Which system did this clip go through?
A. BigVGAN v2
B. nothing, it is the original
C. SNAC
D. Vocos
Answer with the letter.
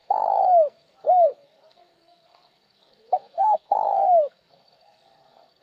C